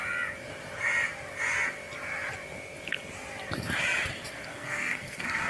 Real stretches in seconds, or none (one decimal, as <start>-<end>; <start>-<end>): 0.0-4.5